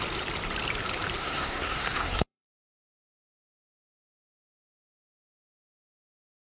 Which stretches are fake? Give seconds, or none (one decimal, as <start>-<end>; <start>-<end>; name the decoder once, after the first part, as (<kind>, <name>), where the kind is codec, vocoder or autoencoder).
1.2-4.0 (codec, SNAC)